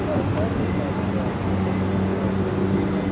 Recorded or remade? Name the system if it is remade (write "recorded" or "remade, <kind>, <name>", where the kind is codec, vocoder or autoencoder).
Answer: recorded